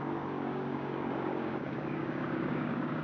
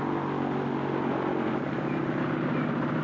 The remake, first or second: first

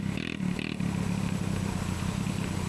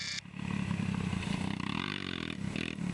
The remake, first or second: second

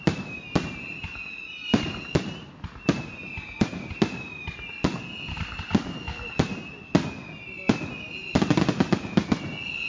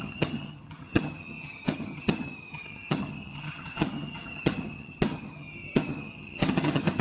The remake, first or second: second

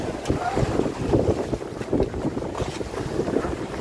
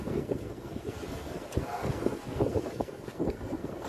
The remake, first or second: second